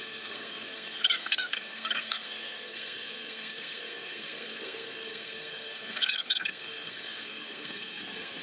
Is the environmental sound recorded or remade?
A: remade